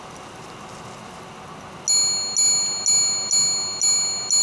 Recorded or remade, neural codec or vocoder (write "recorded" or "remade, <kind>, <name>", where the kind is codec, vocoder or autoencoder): recorded